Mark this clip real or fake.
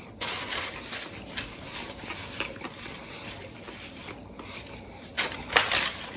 real